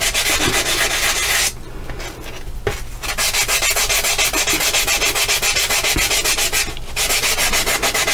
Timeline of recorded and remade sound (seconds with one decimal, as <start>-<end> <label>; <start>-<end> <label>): 0.0-8.1 recorded